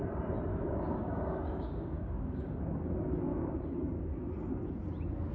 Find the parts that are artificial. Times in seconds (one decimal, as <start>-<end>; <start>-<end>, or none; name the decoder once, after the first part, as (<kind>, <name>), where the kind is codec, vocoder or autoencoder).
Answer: 0.5-2.6 (codec, DAC); 3.3-4.1